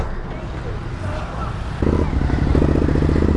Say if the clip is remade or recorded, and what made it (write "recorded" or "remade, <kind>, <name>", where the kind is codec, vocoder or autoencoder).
recorded